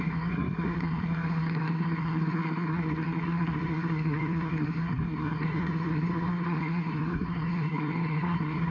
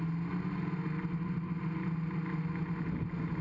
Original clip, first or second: second